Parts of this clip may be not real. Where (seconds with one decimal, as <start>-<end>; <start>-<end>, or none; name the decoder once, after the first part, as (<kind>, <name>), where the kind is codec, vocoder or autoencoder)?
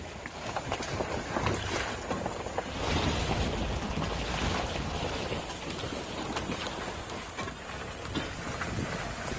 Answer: none